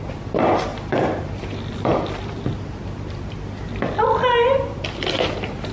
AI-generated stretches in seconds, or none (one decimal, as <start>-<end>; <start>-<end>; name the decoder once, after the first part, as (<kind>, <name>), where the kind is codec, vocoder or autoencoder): 0.7-2.4 (vocoder, BigVGAN v2); 4.5-5.3